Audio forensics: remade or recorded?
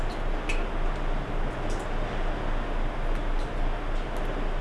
recorded